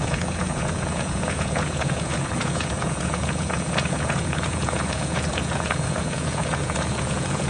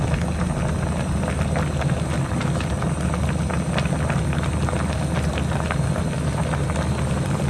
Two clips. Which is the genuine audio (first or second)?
second